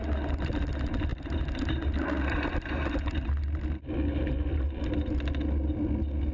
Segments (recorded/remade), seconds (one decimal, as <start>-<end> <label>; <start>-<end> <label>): 0.0-6.3 recorded